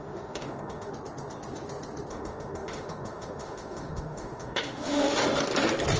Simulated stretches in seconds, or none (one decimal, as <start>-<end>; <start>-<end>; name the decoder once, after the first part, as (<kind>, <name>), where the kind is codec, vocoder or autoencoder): 0.0-0.9 (autoencoder, DAC-VAE); 2.1-5.2